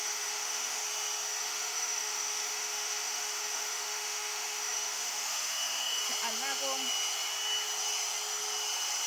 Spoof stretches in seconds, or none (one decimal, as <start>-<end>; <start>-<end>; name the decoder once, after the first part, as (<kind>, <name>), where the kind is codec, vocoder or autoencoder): 0.0-0.8 (autoencoder, DAC-VAE); 1.4-6.0